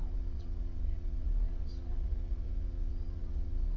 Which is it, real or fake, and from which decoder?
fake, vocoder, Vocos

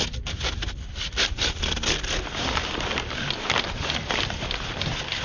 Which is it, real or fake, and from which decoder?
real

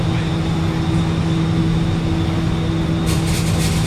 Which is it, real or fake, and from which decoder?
real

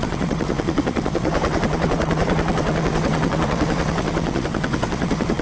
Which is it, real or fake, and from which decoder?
fake, vocoder, WaveNeXt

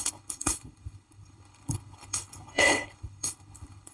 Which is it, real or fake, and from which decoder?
fake, codec, HILCodec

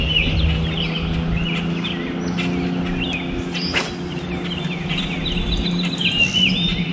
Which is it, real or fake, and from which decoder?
real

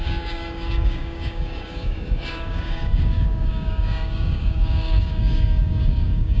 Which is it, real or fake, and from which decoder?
fake, codec, DAC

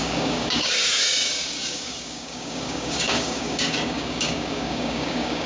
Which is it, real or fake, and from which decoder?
fake, codec, DAC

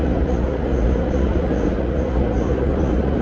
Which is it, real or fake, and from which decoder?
fake, vocoder, Vocos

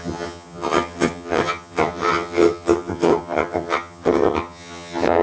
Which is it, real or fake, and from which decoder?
fake, vocoder, HiFi-GAN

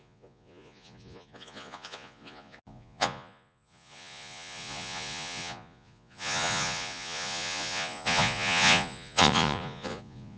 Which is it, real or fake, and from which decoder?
fake, vocoder, Vocos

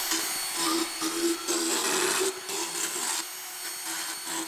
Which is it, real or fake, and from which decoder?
real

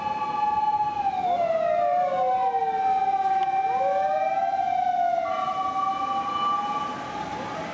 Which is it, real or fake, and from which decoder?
real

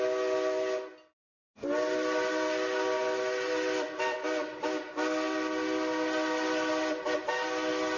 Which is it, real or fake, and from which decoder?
real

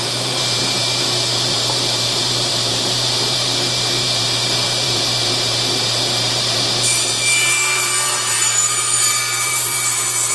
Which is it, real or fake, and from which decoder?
fake, vocoder, BigVGAN v2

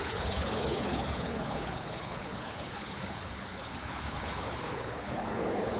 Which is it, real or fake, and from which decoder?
fake, codec, HILCodec